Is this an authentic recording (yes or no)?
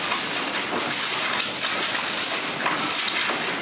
yes